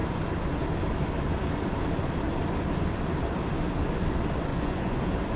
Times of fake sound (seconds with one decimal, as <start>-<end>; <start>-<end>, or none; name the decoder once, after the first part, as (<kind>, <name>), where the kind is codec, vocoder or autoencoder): 4.5-5.0 (vocoder, Vocos)